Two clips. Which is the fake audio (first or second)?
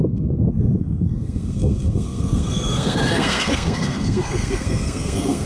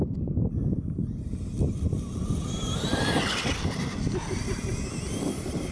first